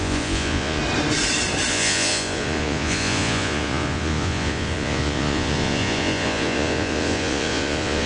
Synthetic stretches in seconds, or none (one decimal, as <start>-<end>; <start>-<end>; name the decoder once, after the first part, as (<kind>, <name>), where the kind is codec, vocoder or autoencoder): 0.0-0.8 (vocoder, Vocos); 1.7-8.1